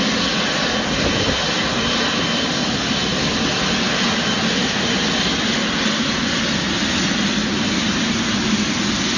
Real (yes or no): yes